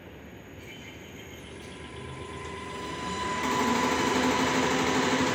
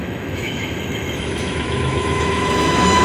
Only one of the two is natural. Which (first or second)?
first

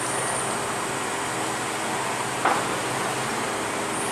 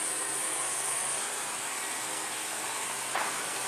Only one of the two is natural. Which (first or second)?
first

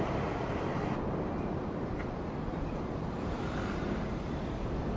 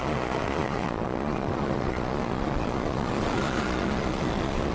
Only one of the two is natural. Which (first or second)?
first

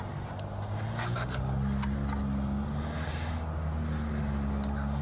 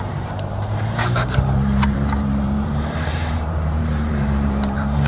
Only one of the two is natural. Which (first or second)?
first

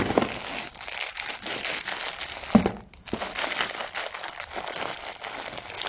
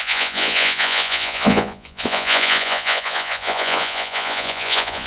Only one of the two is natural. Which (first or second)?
first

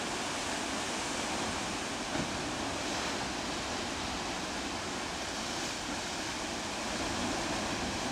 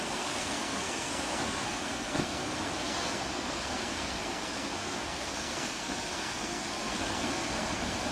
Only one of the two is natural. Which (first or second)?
first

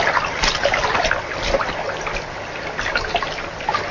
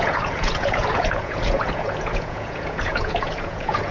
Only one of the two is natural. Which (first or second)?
first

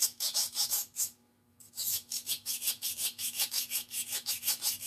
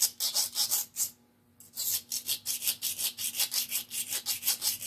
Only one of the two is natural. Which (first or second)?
second